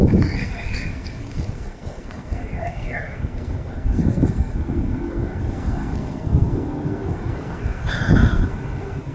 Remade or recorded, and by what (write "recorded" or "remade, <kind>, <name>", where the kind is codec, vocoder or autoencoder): remade, codec, SNAC